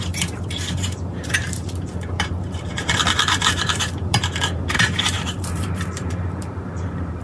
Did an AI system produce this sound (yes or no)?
yes